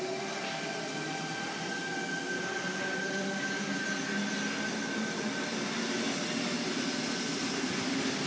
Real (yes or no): yes